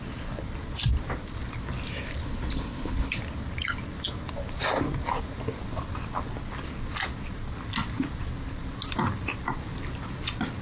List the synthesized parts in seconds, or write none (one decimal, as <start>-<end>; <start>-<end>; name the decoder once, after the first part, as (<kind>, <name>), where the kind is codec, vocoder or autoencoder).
2.2-3.2 (codec, HILCodec)